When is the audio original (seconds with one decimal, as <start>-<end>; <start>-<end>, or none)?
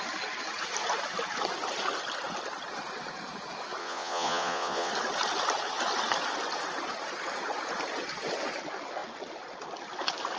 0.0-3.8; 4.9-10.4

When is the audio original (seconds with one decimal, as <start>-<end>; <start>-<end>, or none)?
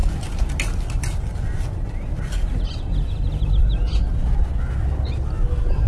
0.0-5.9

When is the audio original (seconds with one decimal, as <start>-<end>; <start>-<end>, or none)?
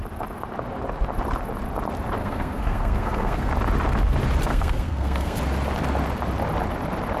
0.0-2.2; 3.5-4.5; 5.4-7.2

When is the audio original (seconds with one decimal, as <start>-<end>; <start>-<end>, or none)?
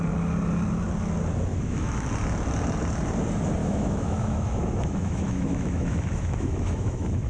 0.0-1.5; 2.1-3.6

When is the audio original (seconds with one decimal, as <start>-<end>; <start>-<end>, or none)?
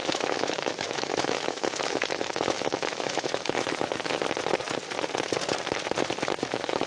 4.2-6.5